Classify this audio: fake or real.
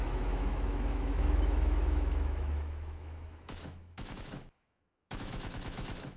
fake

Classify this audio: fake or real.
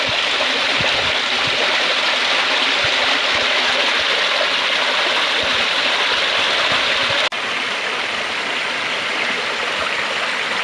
real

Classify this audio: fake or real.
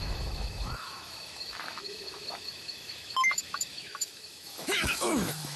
fake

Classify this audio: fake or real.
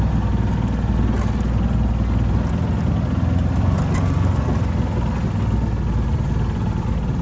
real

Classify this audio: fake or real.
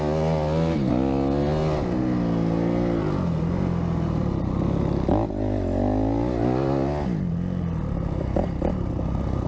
real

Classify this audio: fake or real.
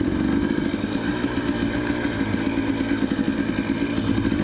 real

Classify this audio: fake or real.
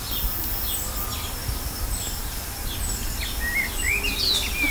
real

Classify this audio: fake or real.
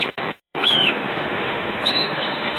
fake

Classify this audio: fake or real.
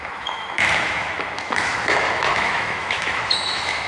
fake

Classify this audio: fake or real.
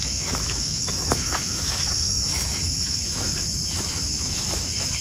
fake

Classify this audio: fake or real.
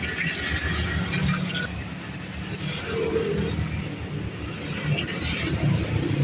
real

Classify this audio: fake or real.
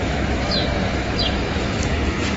fake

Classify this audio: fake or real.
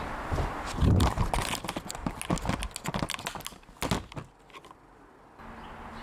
real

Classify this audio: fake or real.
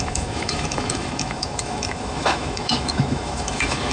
fake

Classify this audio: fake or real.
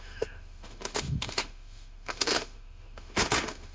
fake